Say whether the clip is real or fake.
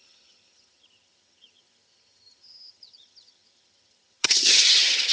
fake